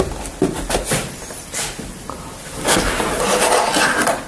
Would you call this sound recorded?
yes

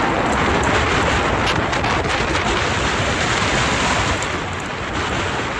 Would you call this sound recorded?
yes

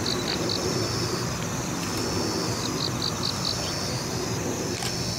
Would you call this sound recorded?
yes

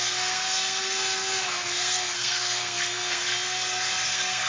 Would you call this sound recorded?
no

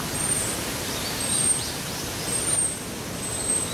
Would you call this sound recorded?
no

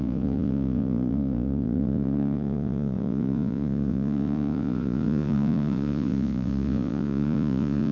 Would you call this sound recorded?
no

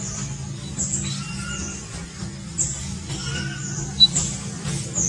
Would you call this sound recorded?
yes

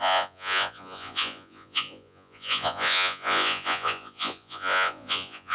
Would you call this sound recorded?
no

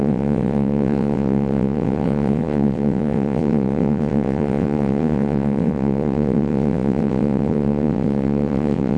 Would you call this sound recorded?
no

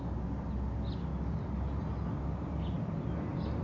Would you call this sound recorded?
yes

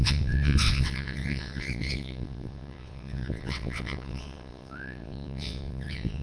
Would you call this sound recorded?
no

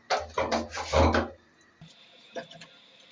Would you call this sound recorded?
yes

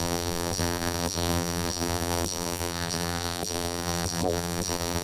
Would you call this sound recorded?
no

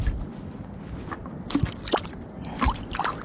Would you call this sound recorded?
yes